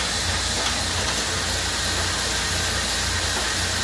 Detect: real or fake real